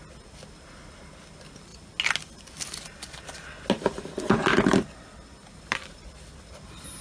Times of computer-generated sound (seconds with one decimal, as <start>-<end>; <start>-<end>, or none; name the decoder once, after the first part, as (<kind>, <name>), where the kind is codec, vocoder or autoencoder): none